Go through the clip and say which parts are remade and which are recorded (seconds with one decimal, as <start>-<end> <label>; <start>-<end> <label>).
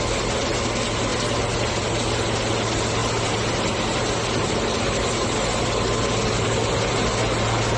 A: 0.0-7.8 recorded